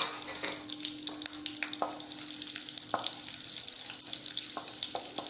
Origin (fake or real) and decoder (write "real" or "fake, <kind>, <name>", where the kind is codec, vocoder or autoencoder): real